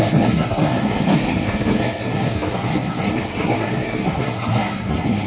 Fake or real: fake